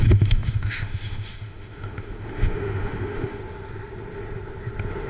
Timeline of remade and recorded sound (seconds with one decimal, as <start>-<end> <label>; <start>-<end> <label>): 0.0-3.4 remade; 3.4-5.1 recorded